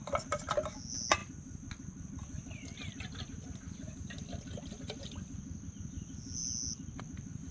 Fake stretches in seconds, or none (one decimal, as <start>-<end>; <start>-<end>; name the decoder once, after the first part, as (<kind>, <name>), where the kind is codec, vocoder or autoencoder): none